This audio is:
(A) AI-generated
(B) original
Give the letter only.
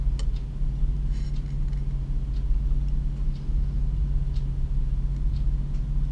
B